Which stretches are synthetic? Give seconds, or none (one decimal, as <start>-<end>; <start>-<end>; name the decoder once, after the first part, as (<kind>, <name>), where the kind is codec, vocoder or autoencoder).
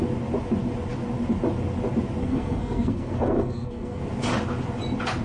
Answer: 2.2-4.0 (codec, SNAC)